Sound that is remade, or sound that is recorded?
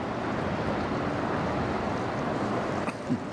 recorded